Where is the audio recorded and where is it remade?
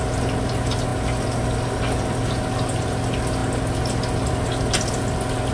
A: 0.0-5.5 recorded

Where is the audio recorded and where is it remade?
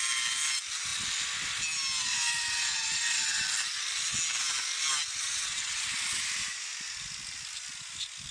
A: 0.0-2.0 recorded; 2.0-3.4 remade; 3.4-5.2 recorded; 5.2-6.2 remade; 6.2-8.3 recorded